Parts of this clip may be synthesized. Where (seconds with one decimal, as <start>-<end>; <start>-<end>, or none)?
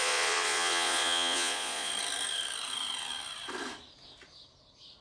0.0-1.9